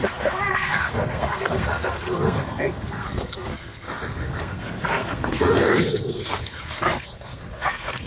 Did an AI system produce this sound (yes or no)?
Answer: yes